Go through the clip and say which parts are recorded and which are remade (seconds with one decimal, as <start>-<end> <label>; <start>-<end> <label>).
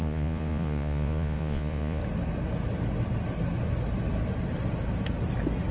0.0-2.0 remade; 2.0-5.7 recorded